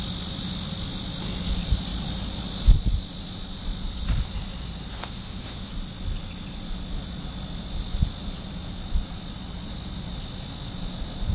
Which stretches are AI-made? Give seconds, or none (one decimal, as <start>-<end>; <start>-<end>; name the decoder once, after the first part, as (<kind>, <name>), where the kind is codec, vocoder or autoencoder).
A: 4.9-5.7 (autoencoder, DAC-VAE)